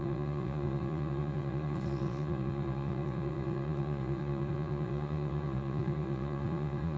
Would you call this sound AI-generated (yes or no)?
yes